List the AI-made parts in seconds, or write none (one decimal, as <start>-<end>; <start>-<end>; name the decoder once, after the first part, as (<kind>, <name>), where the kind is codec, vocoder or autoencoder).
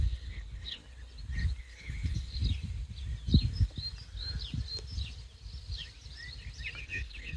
0.0-0.8 (codec, HILCodec); 1.6-2.4; 6.8-7.4